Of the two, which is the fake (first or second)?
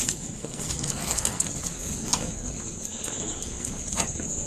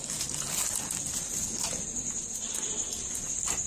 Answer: first